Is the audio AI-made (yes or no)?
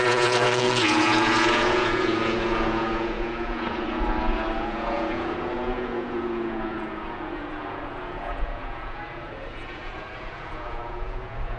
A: yes